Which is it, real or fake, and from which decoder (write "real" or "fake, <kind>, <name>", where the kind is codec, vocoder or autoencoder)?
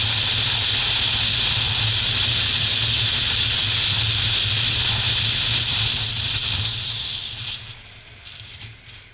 real